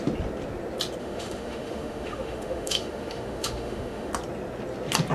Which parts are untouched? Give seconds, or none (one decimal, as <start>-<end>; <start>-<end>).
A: 0.0-1.0; 4.1-5.1

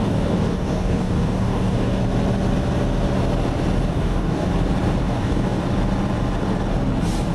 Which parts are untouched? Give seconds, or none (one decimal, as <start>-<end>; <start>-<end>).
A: 2.0-3.9; 4.5-5.0; 5.6-7.3

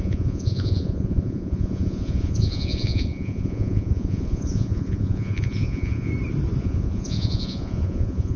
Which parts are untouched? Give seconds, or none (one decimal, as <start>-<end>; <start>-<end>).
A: 6.1-6.6

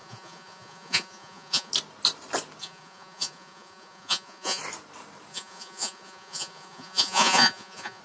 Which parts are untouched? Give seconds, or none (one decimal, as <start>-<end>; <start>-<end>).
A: 1.7-2.6; 4.6-5.3

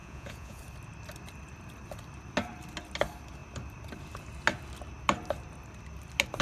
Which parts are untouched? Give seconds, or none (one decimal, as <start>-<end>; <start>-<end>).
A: 0.6-6.4

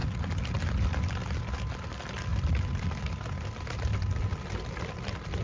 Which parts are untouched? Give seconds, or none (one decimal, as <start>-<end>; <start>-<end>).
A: 0.0-5.4